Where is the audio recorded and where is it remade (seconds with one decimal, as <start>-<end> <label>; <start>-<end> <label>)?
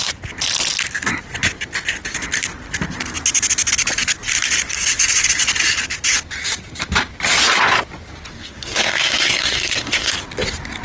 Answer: 0.0-8.3 recorded; 8.3-10.1 remade; 10.1-10.8 recorded